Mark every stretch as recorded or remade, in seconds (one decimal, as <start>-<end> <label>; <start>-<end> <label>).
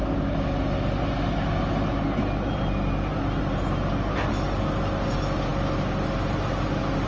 0.0-7.1 recorded